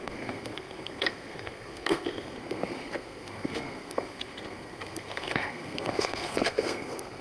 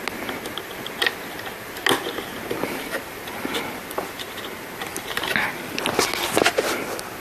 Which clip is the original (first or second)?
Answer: second